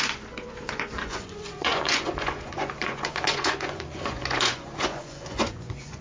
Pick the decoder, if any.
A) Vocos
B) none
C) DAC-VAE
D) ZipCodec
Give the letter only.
A